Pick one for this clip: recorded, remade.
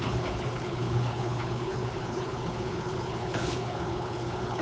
remade